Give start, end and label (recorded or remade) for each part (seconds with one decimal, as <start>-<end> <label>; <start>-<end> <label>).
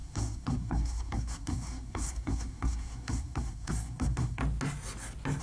0.0-4.4 remade; 4.4-5.4 recorded